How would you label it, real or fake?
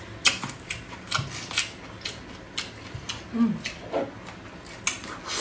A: real